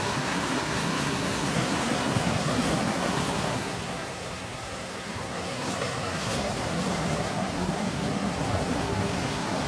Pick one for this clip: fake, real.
fake